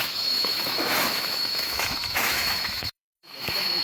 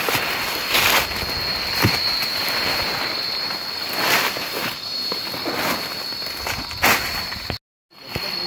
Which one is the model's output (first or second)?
first